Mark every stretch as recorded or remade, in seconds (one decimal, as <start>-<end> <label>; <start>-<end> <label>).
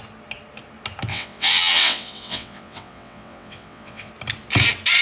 0.0-1.1 recorded; 1.1-4.1 remade; 4.1-5.0 recorded